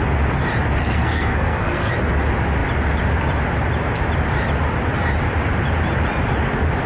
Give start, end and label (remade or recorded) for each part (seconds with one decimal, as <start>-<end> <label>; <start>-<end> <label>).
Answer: 0.0-0.8 recorded; 0.8-1.9 remade; 1.9-6.9 recorded

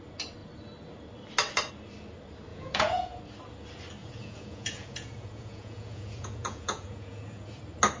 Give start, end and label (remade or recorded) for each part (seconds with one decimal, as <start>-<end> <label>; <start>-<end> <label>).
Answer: 0.0-2.5 recorded; 2.5-3.2 remade; 3.2-4.0 recorded; 4.0-7.6 remade; 7.6-8.0 recorded

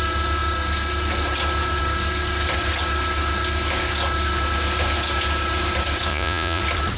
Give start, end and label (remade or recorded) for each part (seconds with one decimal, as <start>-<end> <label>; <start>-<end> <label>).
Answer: 0.0-6.1 recorded; 6.1-6.6 remade; 6.6-7.0 recorded

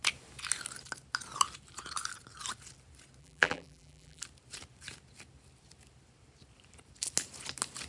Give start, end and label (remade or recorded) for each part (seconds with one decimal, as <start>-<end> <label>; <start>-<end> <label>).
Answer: 0.0-3.2 recorded; 3.2-4.2 remade; 4.2-7.9 recorded

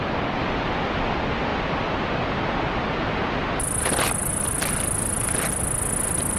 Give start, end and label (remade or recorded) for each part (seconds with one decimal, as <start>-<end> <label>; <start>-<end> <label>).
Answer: 0.0-6.4 recorded